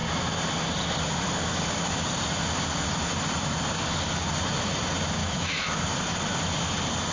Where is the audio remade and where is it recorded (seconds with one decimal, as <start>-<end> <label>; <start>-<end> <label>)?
0.0-5.2 recorded; 5.2-5.8 remade; 5.8-7.1 recorded